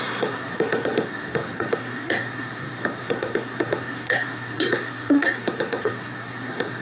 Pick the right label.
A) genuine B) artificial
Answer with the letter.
B